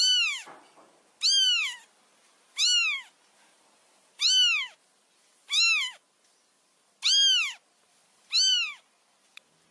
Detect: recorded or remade recorded